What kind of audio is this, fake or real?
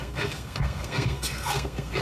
fake